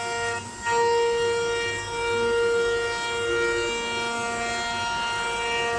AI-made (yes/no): no